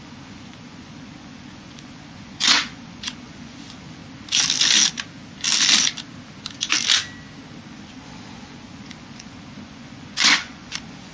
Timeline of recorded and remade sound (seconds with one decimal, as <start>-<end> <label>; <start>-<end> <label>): 0.0-4.0 remade; 4.0-7.7 recorded; 7.7-11.1 remade